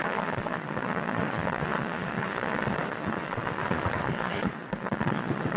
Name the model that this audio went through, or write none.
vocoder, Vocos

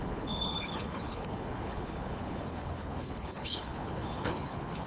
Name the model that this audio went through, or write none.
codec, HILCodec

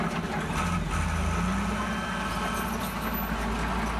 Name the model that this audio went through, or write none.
none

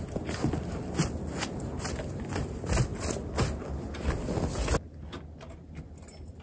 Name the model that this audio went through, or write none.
none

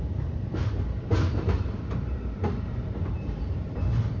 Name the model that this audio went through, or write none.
none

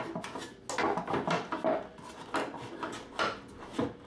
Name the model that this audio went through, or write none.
none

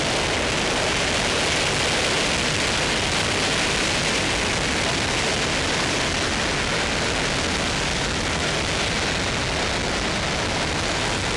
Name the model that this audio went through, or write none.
none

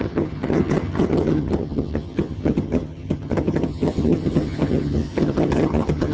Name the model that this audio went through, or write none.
vocoder, HiFi-GAN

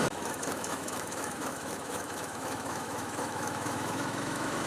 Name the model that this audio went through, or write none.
autoencoder, DAC-VAE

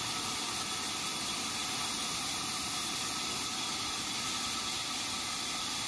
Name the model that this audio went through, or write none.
none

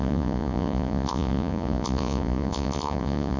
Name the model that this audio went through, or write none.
vocoder, Vocos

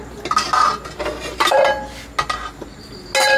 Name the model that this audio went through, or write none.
none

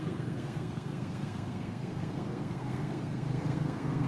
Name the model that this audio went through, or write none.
codec, SNAC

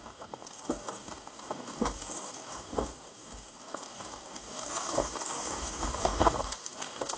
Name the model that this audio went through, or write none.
codec, DAC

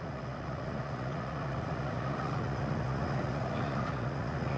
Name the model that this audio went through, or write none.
vocoder, Vocos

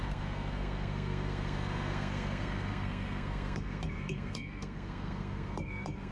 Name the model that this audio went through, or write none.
codec, SNAC